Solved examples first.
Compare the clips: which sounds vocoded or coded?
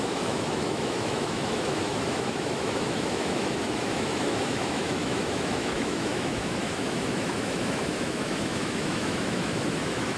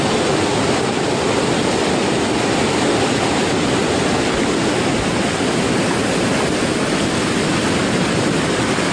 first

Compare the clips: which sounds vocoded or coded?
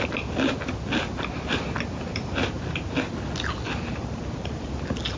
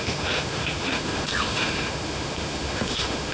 second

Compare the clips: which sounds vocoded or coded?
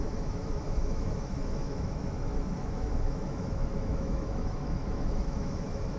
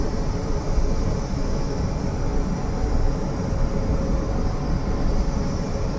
first